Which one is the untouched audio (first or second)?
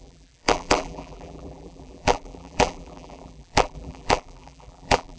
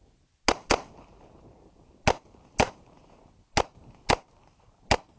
second